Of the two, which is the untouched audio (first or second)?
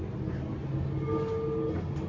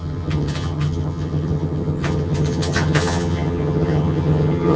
first